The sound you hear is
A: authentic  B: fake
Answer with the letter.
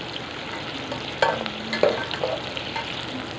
A